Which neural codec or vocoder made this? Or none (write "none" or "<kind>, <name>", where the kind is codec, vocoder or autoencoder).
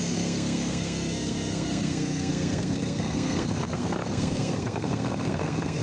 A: codec, SNAC